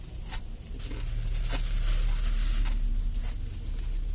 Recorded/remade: recorded